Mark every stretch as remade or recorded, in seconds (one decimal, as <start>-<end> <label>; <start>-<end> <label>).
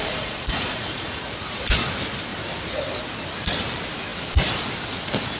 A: 0.0-1.2 remade; 1.2-5.4 recorded